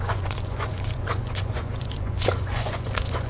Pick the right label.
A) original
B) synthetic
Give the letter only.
B